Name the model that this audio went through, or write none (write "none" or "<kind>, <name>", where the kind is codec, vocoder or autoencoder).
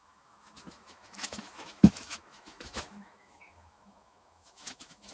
autoencoder, DAC-VAE